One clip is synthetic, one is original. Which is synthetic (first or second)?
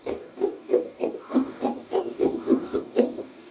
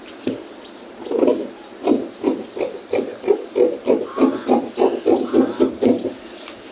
first